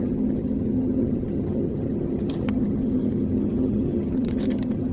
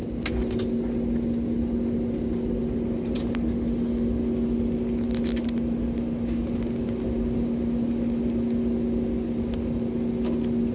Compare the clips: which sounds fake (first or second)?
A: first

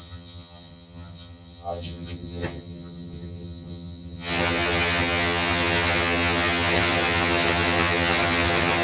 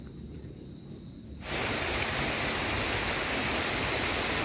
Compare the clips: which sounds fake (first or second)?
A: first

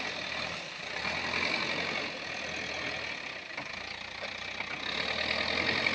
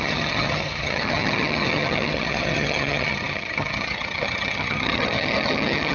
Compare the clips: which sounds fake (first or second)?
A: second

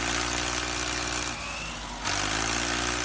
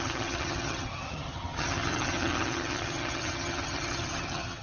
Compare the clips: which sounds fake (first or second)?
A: second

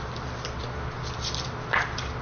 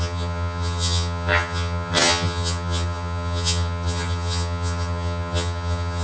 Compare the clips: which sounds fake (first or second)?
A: second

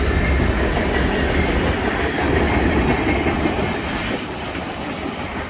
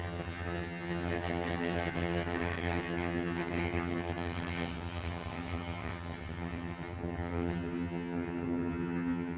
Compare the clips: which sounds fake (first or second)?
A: second